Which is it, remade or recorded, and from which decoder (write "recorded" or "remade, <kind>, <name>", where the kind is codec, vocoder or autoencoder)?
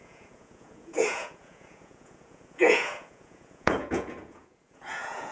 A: remade, vocoder, Vocos